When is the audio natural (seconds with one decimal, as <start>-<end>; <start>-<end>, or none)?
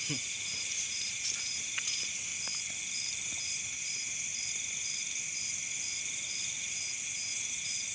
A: 2.3-3.4; 4.3-6.6